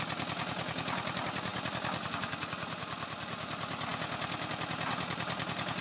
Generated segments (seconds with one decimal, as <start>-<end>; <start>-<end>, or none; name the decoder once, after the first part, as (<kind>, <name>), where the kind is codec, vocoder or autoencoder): none